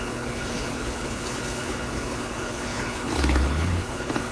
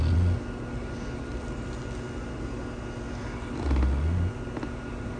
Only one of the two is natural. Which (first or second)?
second